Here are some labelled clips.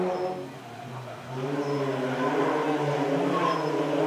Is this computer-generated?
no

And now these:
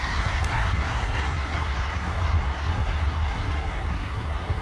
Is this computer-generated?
yes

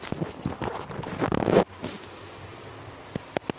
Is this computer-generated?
no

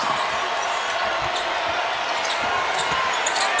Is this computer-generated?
no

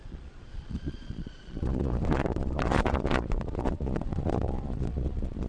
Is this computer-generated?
yes